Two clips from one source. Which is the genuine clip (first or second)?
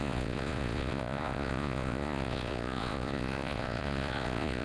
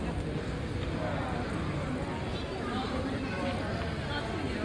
second